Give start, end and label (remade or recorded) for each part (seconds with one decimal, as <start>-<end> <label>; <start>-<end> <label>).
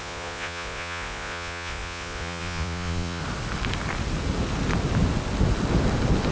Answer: 0.0-3.2 remade; 3.2-6.3 recorded